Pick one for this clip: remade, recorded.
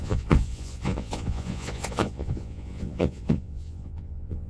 remade